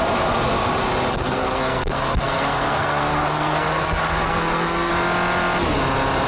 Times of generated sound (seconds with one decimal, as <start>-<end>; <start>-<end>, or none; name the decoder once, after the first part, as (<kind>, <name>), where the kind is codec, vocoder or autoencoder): 1.1-4.9 (codec, SNAC)